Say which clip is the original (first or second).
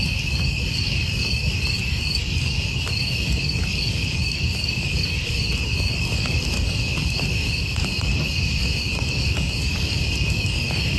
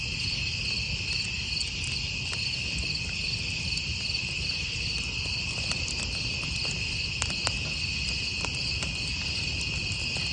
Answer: second